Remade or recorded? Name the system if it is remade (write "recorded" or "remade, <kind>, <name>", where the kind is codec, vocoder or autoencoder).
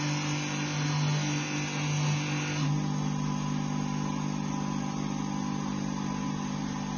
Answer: recorded